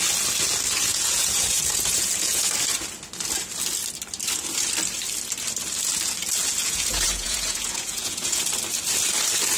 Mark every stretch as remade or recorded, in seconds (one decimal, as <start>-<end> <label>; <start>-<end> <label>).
0.0-0.9 recorded; 0.9-2.5 remade; 2.5-6.6 recorded; 6.6-8.4 remade; 8.4-9.6 recorded